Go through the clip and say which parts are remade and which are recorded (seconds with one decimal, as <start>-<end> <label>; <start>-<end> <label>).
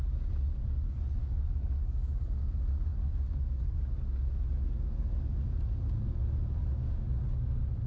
0.0-1.2 recorded; 1.2-2.2 remade; 2.2-6.6 recorded; 6.6-7.3 remade; 7.3-7.9 recorded